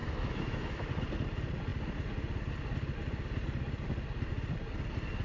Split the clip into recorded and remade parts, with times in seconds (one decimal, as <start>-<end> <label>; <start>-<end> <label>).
0.0-0.9 remade; 0.9-5.2 recorded